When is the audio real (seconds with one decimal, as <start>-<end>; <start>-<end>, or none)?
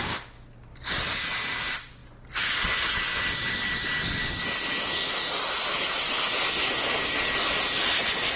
0.0-8.4